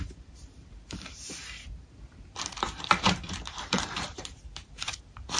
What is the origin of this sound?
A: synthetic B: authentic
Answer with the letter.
A